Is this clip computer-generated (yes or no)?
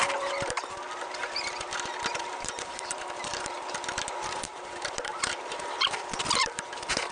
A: yes